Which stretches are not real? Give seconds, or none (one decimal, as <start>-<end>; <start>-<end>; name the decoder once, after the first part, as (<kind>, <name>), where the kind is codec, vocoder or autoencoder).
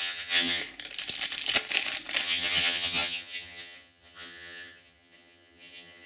0.0-0.6 (vocoder, HiFi-GAN); 2.2-6.1